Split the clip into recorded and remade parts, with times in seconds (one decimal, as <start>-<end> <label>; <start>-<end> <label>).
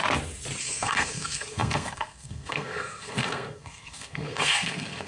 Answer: 0.0-0.6 recorded; 0.6-5.1 remade